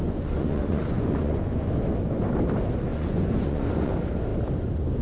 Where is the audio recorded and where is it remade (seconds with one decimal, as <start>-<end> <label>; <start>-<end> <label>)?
0.0-1.8 remade; 1.8-2.9 recorded; 2.9-3.9 remade; 3.9-5.0 recorded